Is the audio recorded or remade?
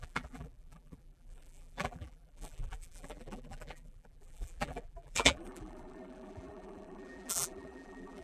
remade